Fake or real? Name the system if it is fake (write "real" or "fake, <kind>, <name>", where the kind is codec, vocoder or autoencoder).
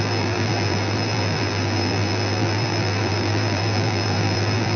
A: fake, vocoder, BigVGAN v2